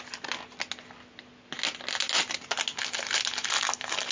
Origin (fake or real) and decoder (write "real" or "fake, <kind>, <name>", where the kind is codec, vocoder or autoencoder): real